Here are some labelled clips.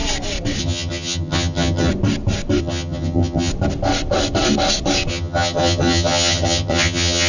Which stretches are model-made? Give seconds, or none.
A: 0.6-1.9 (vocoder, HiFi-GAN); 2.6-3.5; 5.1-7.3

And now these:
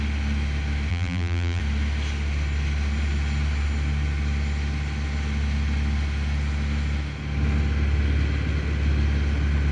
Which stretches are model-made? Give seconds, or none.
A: 0.9-1.6 (vocoder, BigVGAN v2)